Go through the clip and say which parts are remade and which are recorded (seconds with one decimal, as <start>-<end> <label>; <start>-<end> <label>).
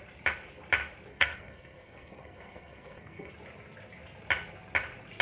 0.0-1.1 recorded; 1.1-3.3 remade; 3.3-5.2 recorded